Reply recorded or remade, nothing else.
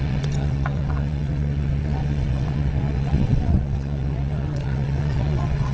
remade